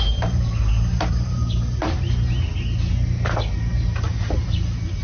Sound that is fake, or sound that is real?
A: real